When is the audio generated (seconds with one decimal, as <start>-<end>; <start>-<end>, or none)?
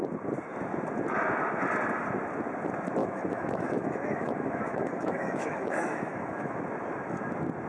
3.0-6.6